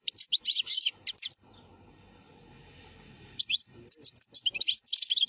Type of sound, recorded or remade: recorded